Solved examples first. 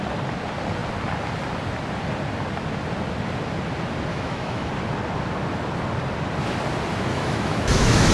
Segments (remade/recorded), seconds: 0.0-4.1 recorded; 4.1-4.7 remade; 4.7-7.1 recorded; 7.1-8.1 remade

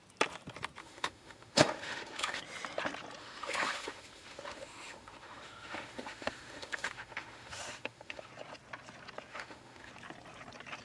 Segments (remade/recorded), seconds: 0.0-0.8 recorded; 0.8-2.4 remade; 2.4-3.2 recorded; 3.2-8.3 remade; 8.3-9.3 recorded; 9.3-9.9 remade; 9.9-10.8 recorded

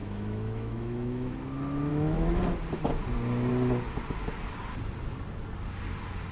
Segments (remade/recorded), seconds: 0.0-1.3 remade; 1.3-1.9 recorded; 1.9-2.4 remade; 2.4-6.3 recorded

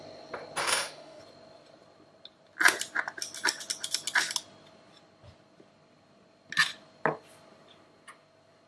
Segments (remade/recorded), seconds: 0.0-0.6 recorded; 0.6-1.2 remade; 1.2-8.7 recorded

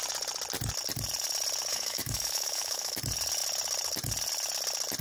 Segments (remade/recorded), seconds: 0.0-1.7 recorded; 1.7-3.0 remade; 3.0-5.0 recorded

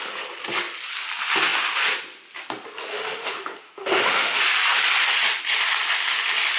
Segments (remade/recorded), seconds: 0.0-2.9 recorded; 2.9-4.4 remade; 4.4-6.6 recorded